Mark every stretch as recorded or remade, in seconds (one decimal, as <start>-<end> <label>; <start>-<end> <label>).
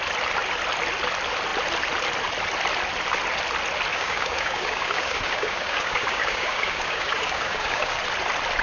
0.0-3.9 recorded; 3.9-8.0 remade; 8.0-8.6 recorded